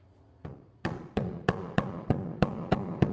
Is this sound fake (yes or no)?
yes